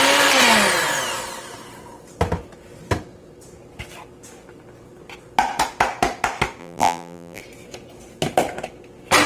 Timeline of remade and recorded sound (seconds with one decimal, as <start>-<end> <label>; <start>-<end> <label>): 0.0-6.6 recorded; 6.6-7.4 remade; 7.4-9.3 recorded